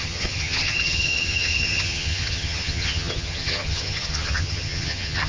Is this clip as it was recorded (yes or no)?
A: no